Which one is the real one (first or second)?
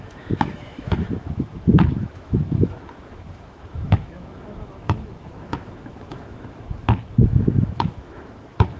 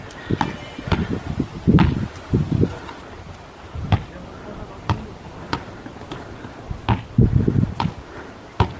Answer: second